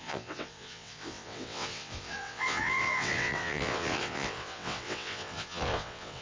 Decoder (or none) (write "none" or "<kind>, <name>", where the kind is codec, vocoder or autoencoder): vocoder, WaveNeXt